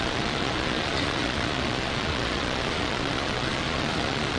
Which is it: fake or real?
fake